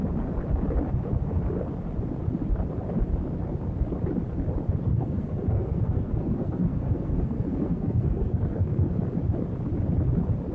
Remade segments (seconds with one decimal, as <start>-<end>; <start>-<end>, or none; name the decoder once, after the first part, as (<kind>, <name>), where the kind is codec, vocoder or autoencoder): 4.9-9.0 (codec, SNAC)